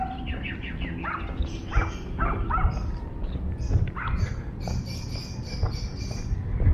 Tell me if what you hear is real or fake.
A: real